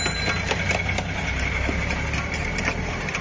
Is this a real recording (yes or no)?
yes